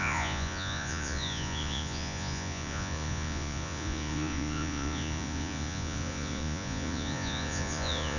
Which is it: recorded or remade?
remade